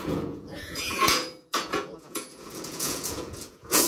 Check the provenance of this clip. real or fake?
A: fake